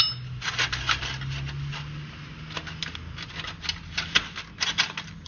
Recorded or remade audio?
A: recorded